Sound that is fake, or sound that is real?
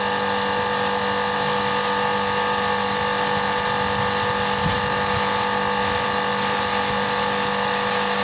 real